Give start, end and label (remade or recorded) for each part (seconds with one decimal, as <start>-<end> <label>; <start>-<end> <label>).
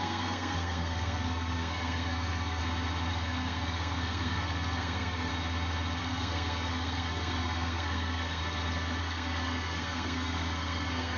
0.0-2.6 remade; 2.6-3.1 recorded; 3.1-5.3 remade; 5.3-6.0 recorded; 6.0-8.4 remade; 8.4-9.0 recorded; 9.0-11.2 remade